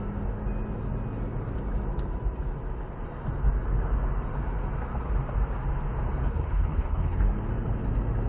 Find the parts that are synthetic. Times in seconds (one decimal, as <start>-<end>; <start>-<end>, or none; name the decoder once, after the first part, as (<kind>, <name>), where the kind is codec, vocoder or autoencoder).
6.2-7.2 (codec, HILCodec)